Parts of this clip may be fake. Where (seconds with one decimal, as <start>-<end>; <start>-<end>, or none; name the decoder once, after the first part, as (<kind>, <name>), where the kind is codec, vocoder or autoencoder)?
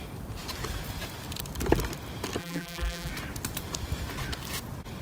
2.4-3.1 (vocoder, BigVGAN v2)